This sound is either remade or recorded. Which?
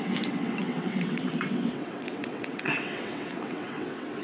remade